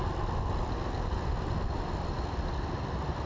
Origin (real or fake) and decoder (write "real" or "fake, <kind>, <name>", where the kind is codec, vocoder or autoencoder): real